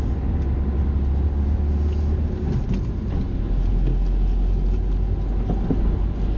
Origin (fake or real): real